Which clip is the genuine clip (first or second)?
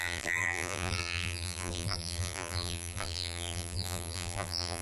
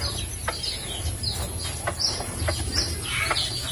second